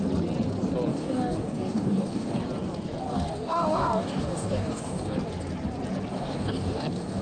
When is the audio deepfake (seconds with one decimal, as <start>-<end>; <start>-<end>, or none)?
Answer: 0.9-2.4; 3.1-5.2; 6.1-7.2

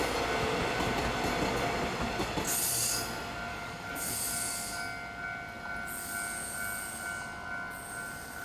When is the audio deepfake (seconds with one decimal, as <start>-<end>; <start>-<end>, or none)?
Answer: 3.5-4.1

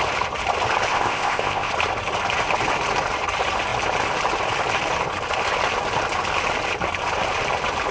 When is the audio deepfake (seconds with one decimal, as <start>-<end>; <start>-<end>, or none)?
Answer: 0.9-1.7